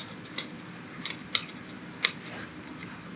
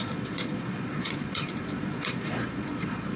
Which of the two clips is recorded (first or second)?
first